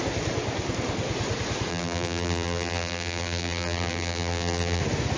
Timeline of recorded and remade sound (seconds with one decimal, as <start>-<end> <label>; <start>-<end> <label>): 0.0-1.7 recorded; 1.7-4.8 remade; 4.8-5.2 recorded